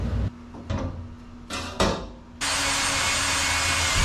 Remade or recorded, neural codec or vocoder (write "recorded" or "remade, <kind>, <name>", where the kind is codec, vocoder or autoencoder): recorded